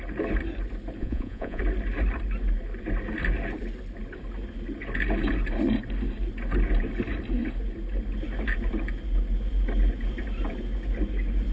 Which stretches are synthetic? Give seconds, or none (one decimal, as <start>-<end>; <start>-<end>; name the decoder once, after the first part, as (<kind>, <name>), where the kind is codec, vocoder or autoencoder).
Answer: 1.0-1.6 (vocoder, Vocos)